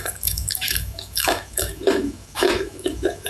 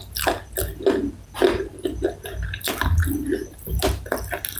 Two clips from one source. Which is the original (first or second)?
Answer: second